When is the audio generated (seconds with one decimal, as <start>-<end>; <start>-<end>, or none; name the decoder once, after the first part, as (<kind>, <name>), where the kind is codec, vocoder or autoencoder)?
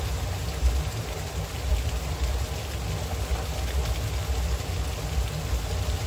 none